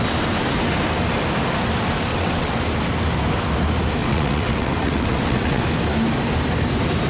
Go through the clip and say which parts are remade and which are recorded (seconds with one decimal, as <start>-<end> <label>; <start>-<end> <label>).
0.0-2.1 recorded; 2.1-2.6 remade; 2.6-4.0 recorded; 4.0-5.6 remade; 5.6-7.1 recorded